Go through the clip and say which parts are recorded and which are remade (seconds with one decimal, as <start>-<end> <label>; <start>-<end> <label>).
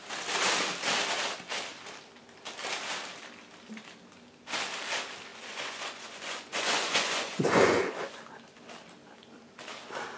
0.0-5.3 recorded; 5.3-8.2 remade; 8.2-10.2 recorded